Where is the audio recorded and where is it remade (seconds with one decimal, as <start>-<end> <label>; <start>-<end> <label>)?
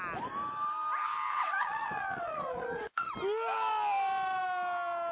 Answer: 0.0-1.3 recorded; 1.3-3.1 remade; 3.1-5.1 recorded